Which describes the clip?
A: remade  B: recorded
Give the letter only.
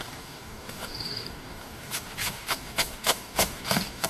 A